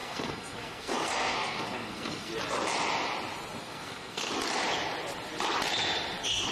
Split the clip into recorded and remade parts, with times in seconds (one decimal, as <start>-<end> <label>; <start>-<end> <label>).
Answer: 0.0-2.3 remade; 2.3-3.6 recorded; 3.6-4.3 remade; 4.3-6.5 recorded